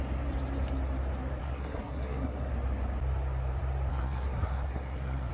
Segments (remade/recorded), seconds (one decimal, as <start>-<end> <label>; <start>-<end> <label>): 0.0-1.4 recorded; 1.4-2.5 remade; 2.5-3.9 recorded; 3.9-5.3 remade